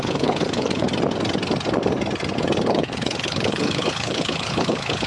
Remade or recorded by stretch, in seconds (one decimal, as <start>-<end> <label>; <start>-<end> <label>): 0.0-0.9 remade; 0.9-2.7 recorded; 2.7-5.1 remade